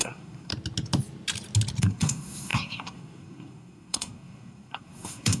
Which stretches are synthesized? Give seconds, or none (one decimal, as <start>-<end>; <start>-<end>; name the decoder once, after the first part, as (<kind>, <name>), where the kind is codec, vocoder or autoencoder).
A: 0.0-0.5 (codec, SNAC); 1.8-5.4